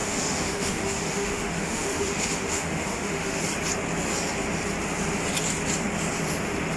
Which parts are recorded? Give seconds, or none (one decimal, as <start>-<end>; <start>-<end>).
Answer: 3.4-6.8